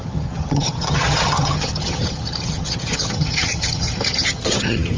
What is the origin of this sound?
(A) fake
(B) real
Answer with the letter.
A